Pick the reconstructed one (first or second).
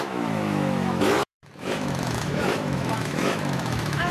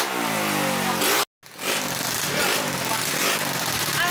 first